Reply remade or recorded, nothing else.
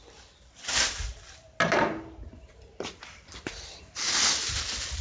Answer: recorded